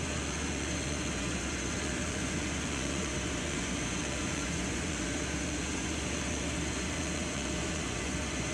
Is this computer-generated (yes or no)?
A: yes